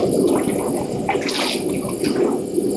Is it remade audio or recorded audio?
recorded